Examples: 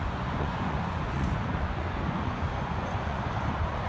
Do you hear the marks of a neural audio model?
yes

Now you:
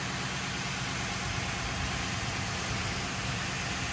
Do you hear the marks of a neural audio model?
no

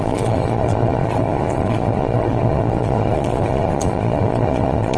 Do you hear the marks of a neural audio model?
yes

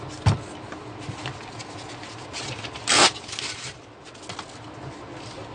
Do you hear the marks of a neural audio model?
no